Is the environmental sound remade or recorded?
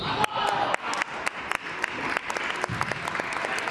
recorded